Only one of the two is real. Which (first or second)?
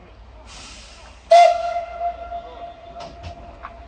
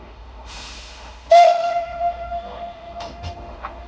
first